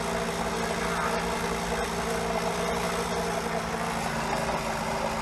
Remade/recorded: recorded